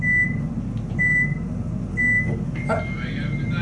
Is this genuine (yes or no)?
yes